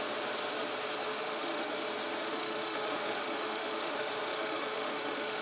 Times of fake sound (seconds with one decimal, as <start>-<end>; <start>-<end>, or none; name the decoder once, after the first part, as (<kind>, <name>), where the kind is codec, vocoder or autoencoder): 1.1-1.7 (autoencoder, DAC-VAE); 2.2-5.4